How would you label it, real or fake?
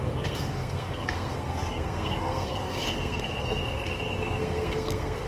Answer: fake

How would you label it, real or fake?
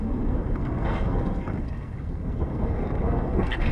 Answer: fake